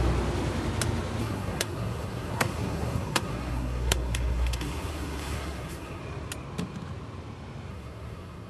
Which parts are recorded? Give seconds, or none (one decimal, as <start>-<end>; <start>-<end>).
0.0-1.2; 6.0-7.7